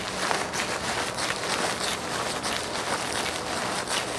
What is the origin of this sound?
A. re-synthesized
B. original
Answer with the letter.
B